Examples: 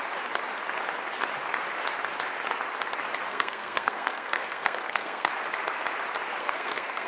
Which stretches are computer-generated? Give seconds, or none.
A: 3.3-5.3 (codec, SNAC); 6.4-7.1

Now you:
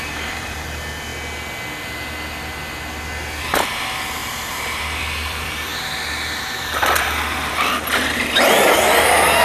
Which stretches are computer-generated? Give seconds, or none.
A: 0.0-1.1 (vocoder, BigVGAN v2); 3.4-5.7; 6.4-9.4

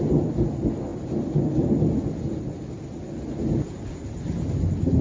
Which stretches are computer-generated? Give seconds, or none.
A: none

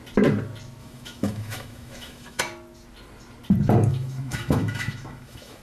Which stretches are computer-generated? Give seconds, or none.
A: 0.8-2.4 (autoencoder, DAC-VAE); 3.9-5.6

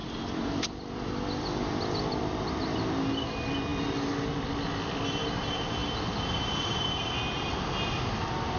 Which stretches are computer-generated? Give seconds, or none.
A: none

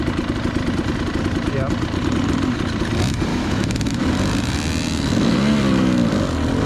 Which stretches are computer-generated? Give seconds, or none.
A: 3.3-4.0 (autoencoder, DAC-VAE)